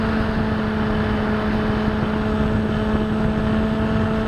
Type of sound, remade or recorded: recorded